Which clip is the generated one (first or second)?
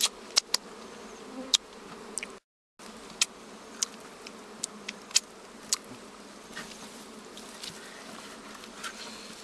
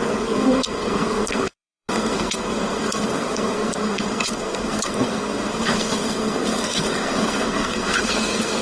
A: second